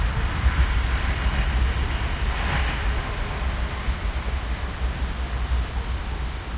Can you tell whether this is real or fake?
real